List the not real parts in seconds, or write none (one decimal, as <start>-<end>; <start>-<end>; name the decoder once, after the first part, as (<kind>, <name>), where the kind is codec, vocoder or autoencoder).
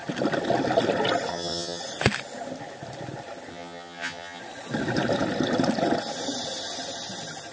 1.3-1.8 (vocoder, HiFi-GAN); 3.5-4.4